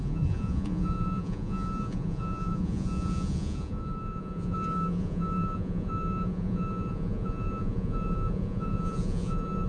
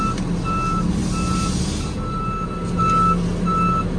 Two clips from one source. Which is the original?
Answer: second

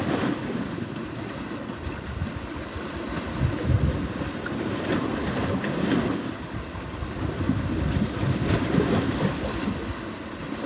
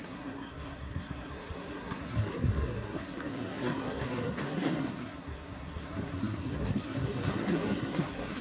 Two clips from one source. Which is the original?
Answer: first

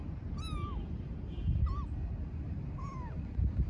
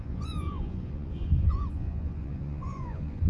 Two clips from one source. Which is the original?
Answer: first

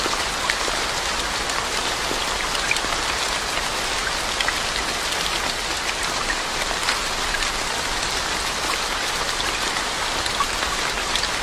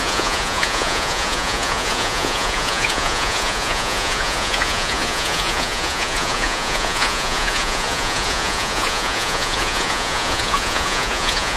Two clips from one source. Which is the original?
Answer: first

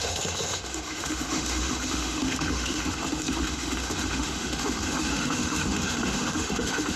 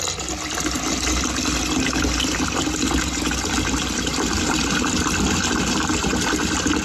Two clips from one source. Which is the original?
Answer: second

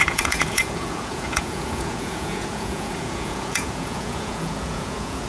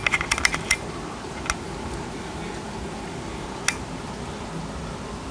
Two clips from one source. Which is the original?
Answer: second